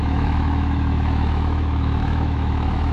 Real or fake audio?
fake